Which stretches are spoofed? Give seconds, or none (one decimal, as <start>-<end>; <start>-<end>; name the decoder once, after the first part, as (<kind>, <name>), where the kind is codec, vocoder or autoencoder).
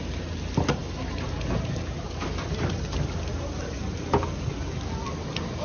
none